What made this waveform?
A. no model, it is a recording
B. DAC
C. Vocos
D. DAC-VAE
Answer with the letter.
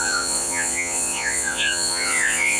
C